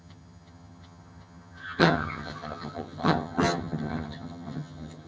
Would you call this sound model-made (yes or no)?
yes